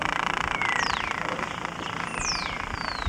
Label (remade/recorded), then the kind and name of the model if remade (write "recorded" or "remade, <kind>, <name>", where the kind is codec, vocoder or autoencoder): remade, vocoder, BigVGAN v2